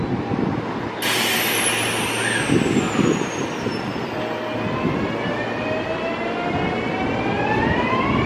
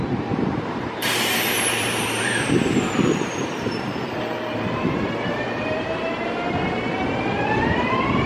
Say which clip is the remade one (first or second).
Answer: second